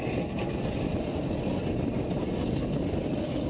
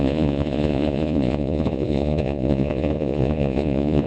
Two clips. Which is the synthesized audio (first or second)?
second